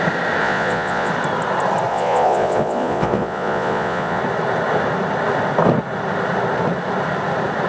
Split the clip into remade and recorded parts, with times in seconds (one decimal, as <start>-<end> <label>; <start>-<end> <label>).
0.0-0.4 recorded; 0.4-1.1 remade; 1.1-1.9 recorded; 1.9-4.2 remade; 4.2-7.7 recorded